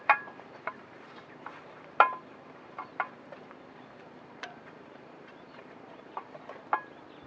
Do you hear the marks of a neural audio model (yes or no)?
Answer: yes